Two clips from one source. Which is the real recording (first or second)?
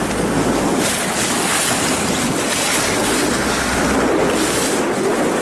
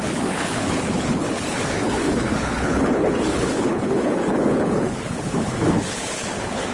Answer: first